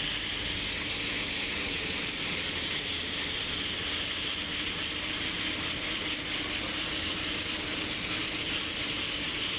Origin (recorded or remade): recorded